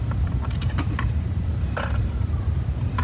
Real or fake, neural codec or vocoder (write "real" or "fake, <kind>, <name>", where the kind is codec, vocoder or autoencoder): real